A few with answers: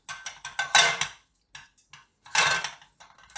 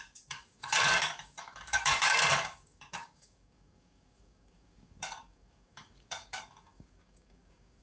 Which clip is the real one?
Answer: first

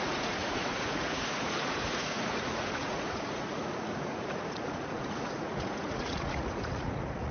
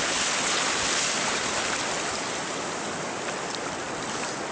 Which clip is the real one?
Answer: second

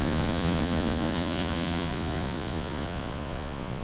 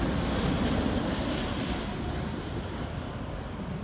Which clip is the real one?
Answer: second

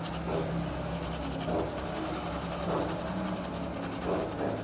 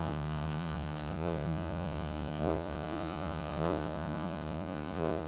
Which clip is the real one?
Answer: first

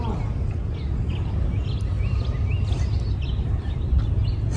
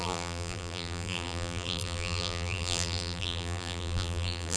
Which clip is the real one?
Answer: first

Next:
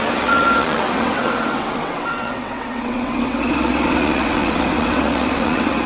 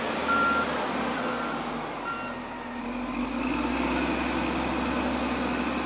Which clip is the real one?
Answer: second